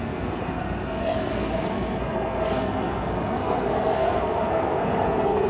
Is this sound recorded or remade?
remade